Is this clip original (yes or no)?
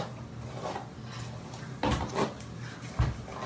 yes